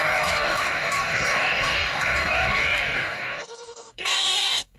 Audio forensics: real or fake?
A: fake